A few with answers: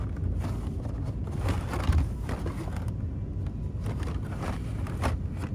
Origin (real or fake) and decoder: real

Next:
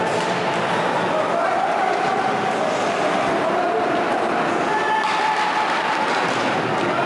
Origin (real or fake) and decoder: real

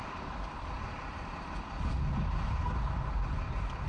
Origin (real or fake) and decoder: fake, vocoder, BigVGAN v2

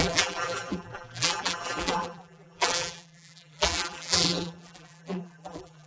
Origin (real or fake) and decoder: fake, vocoder, BigVGAN v2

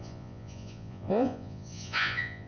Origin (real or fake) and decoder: fake, vocoder, Vocos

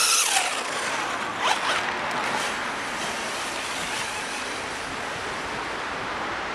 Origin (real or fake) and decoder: real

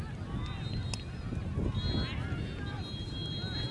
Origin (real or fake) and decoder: real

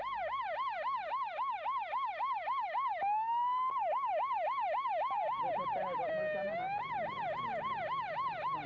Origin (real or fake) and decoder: real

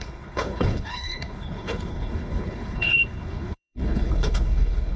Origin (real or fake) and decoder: fake, codec, HILCodec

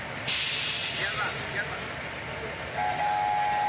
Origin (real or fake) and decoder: real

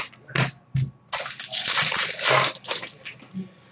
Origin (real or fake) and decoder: real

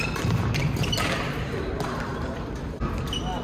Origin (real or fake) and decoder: real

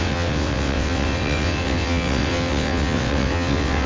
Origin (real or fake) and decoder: fake, vocoder, WaveNeXt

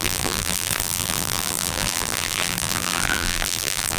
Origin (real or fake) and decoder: fake, vocoder, BigVGAN v2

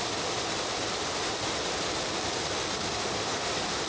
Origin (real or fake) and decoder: real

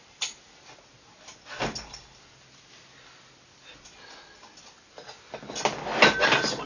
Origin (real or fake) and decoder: real